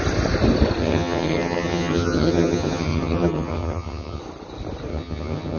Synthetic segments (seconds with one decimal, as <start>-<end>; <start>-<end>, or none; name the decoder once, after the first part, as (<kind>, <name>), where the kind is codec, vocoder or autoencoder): 0.8-4.2 (vocoder, HiFi-GAN); 4.9-5.6